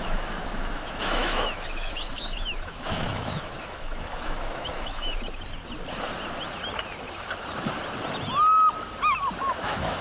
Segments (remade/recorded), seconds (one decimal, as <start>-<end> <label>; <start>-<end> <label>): 0.0-5.1 remade; 5.1-9.4 recorded; 9.4-10.0 remade